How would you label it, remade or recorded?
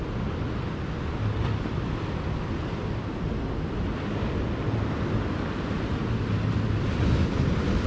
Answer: recorded